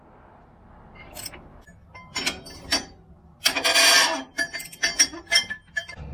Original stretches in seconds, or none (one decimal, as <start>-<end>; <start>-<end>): 0.0-6.1